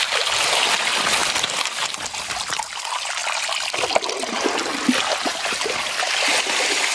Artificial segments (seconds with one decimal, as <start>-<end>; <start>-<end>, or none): none